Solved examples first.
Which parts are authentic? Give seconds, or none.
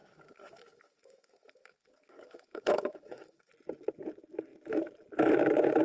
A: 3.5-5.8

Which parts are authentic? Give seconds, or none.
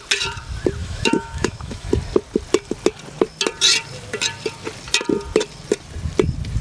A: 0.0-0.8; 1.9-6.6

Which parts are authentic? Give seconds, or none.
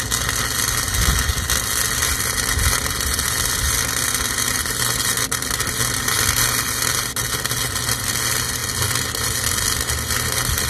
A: 0.0-10.7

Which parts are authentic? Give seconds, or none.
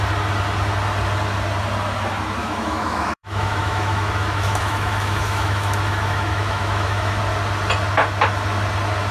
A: 0.0-2.4; 7.2-9.1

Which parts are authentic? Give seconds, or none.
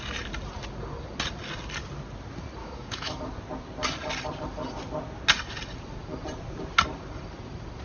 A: 0.0-2.6; 3.2-7.8